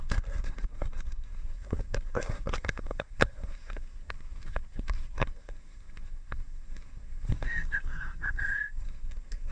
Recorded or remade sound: remade